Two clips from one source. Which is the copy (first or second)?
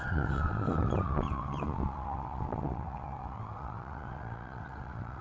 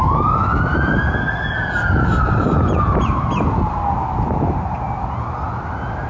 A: first